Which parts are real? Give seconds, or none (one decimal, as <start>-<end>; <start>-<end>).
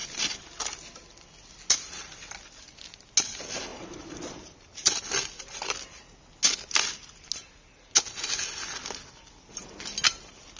0.0-3.7; 5.0-10.6